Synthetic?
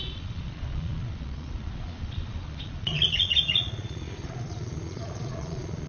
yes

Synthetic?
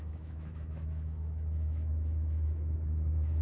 yes